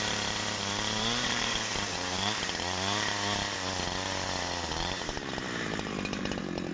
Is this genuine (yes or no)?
no